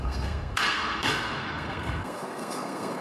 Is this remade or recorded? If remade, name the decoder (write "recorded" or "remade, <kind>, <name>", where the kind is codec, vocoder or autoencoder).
remade, codec, SNAC